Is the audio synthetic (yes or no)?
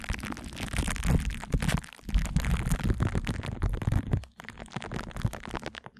no